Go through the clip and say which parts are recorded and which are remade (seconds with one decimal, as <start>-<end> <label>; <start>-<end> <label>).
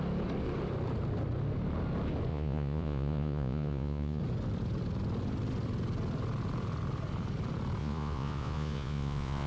0.0-2.3 recorded; 2.3-4.2 remade; 4.2-7.8 recorded; 7.8-9.5 remade